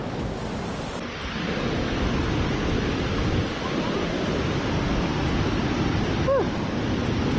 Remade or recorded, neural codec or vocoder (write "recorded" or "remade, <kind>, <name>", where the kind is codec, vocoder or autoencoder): recorded